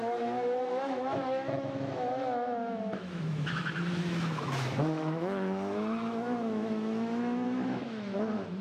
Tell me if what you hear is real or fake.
fake